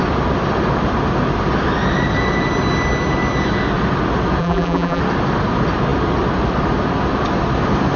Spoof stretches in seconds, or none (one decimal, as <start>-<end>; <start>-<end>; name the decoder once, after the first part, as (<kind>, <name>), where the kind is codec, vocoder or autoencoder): 4.4-5.0 (vocoder, BigVGAN v2)